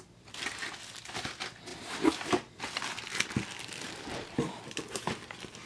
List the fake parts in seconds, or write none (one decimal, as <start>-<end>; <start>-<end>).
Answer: none